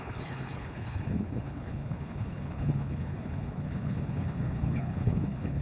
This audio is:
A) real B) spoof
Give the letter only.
B